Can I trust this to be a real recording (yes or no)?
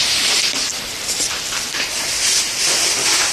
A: yes